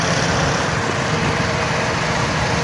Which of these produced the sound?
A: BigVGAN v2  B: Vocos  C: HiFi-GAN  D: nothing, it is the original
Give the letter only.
D